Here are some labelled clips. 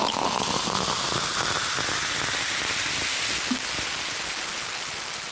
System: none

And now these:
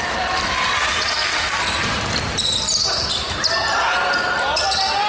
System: none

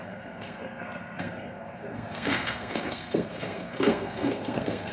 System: codec, SNAC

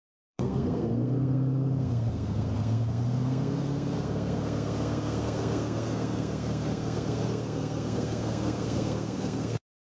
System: codec, SNAC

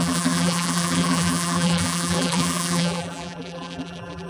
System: vocoder, BigVGAN v2